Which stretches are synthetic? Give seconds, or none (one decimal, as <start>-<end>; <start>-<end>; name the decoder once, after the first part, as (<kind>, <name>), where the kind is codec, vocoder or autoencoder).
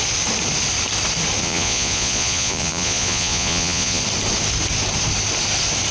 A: 1.4-4.0 (vocoder, Vocos)